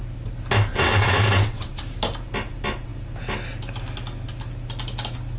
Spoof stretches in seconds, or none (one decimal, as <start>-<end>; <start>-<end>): 0.7-1.8

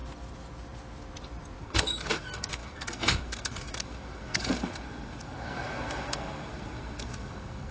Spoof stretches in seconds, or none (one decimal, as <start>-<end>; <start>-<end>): 1.6-7.7

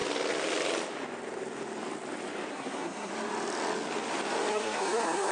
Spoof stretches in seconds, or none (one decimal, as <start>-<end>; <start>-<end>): 2.5-3.1; 4.5-5.3

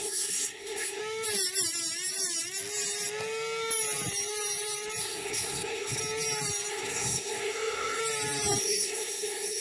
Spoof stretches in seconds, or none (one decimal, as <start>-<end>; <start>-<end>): 0.0-1.0; 5.0-6.0; 6.7-8.0; 8.6-9.6

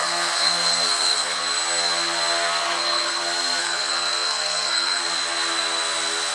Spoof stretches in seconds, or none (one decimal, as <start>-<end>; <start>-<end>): 0.0-1.4; 2.6-3.2; 3.6-5.0

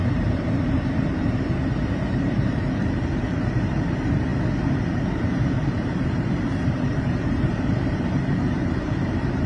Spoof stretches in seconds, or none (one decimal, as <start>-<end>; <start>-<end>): 0.0-4.3; 4.9-9.5